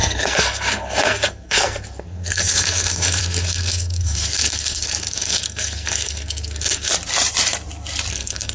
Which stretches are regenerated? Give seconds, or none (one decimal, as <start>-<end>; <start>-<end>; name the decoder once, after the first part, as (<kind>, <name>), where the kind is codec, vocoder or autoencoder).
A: 0.0-6.9 (codec, SNAC); 8.1-8.5

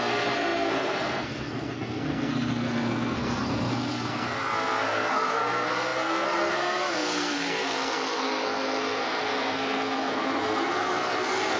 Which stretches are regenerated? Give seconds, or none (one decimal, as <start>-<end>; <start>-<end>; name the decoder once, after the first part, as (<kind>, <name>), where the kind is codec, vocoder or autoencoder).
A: 0.0-11.6 (codec, SNAC)

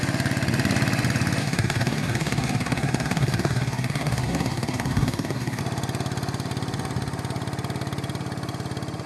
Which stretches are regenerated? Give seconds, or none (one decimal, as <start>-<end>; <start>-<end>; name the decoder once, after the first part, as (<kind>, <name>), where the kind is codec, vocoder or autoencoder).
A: 1.4-5.6 (codec, SNAC)

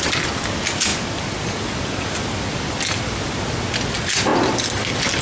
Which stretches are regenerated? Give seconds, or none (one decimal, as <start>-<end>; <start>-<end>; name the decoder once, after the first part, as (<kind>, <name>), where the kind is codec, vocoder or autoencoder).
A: none

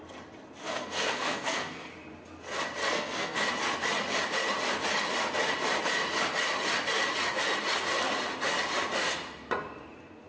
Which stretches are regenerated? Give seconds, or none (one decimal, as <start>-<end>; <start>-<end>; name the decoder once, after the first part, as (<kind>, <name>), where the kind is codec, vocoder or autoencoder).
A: 0.6-1.9 (codec, SNAC); 2.8-3.5

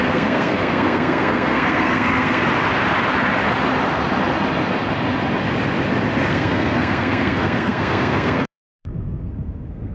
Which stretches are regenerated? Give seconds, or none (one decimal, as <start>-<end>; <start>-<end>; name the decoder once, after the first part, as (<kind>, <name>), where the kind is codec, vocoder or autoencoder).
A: 0.0-2.4 (codec, SNAC); 6.3-9.9

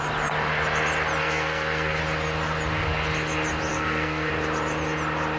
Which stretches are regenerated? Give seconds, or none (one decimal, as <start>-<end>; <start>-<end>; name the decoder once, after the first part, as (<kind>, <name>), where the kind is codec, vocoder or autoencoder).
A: 1.2-2.0 (codec, SNAC); 3.7-4.3

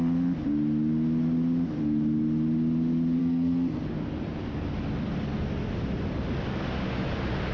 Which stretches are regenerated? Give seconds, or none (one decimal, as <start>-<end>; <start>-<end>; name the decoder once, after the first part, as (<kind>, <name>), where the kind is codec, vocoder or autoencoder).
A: 3.2-3.8 (codec, SNAC)